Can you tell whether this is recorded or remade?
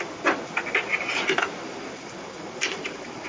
remade